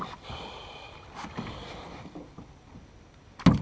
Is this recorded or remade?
recorded